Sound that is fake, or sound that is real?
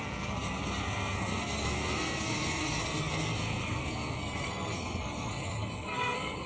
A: fake